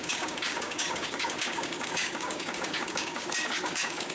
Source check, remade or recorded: remade